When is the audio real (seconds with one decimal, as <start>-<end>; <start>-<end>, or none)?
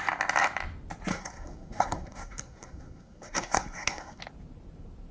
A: 0.0-1.1; 4.2-5.1